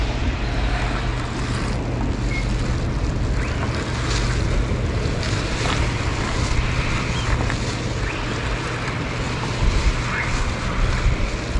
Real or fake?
real